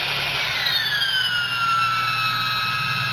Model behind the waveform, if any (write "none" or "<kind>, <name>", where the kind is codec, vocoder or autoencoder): none